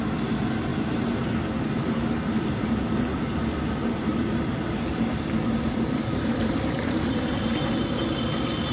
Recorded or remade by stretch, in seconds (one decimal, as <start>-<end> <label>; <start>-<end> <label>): 0.0-0.7 recorded; 0.7-3.4 remade; 3.4-4.2 recorded; 4.2-8.0 remade; 8.0-8.7 recorded